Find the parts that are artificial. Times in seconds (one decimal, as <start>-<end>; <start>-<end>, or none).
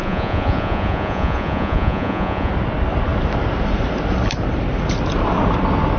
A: 0.0-2.5